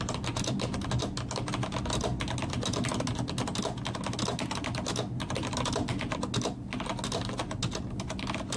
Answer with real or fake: real